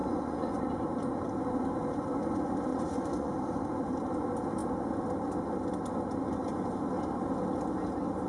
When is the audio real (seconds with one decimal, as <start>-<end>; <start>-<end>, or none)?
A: 0.7-2.7; 3.3-8.3